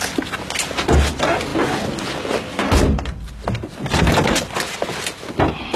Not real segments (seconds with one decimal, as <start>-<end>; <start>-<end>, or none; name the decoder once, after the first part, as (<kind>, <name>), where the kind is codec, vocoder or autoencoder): none